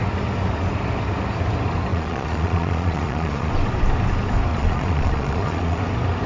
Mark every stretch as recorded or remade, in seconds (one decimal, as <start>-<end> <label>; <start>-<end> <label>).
0.0-1.9 recorded; 1.9-3.5 remade; 3.5-4.5 recorded; 4.5-5.8 remade; 5.8-6.3 recorded